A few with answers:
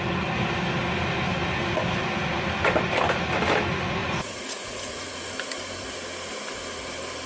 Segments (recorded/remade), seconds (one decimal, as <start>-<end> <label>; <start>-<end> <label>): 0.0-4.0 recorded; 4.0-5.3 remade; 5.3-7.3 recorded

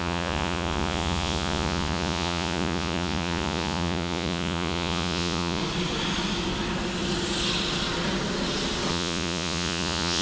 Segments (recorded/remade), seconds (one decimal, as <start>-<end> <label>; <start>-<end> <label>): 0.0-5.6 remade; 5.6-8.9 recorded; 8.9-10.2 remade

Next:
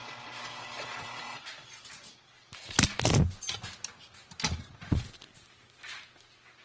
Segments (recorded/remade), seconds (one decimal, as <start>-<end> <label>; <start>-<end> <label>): 0.0-6.6 recorded

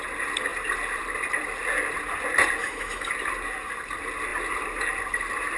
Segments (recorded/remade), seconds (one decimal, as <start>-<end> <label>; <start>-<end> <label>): 0.0-2.6 recorded; 2.6-3.1 remade; 3.1-5.6 recorded